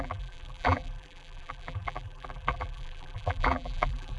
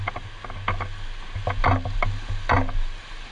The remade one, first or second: first